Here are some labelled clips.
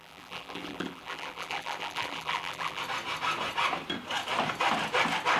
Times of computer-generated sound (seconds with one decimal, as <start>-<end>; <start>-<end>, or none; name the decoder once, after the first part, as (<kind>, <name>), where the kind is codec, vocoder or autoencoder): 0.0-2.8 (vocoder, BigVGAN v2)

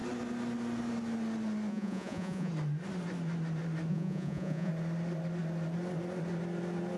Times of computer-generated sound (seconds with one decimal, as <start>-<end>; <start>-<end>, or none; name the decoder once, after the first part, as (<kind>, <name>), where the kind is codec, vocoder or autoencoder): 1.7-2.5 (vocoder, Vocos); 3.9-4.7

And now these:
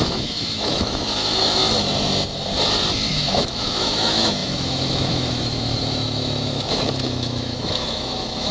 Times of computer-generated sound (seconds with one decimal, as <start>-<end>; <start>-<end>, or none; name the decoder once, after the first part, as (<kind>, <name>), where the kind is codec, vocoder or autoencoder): 0.0-1.6 (autoencoder, DAC-VAE); 3.1-8.5